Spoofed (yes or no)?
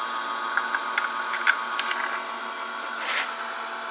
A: no